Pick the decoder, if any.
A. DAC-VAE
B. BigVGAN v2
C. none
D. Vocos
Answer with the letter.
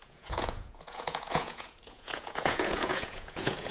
D